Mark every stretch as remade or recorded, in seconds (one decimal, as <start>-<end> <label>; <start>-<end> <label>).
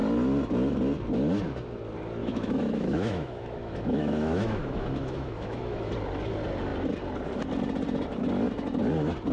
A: 0.0-2.2 recorded; 2.2-5.9 remade; 5.9-9.3 recorded